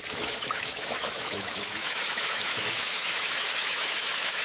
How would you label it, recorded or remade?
remade